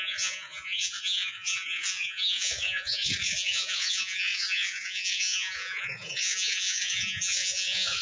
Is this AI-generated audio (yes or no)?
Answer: yes